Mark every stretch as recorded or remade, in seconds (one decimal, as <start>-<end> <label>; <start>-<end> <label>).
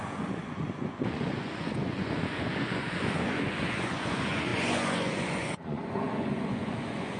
0.0-7.2 remade